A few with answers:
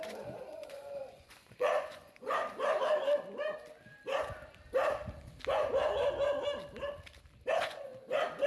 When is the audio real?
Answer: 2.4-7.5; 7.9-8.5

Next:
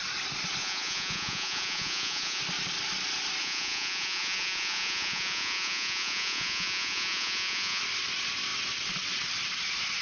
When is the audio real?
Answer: 0.0-0.6; 2.4-3.4; 7.8-10.0

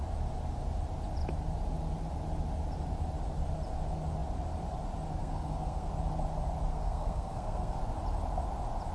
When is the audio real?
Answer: 0.0-5.2; 5.9-6.7; 7.8-8.9

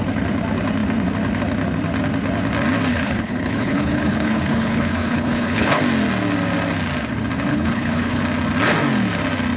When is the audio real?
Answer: 0.0-2.9; 5.8-7.5; 8.2-9.6

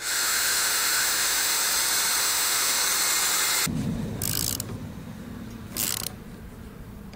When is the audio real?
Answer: 1.6-2.2; 2.8-7.2

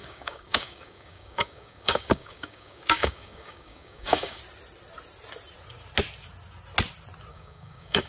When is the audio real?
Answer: 4.4-7.3

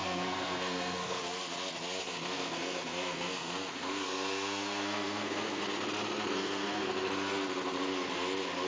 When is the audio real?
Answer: 1.2-2.0; 5.6-6.3; 6.9-8.7

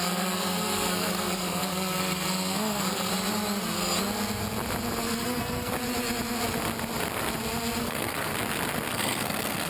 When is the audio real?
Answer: 3.1-5.0; 5.7-7.8; 8.3-8.9